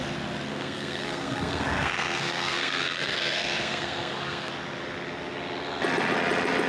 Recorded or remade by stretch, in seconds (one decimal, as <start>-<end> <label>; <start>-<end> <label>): 0.0-0.5 recorded; 0.5-4.5 remade; 4.5-6.7 recorded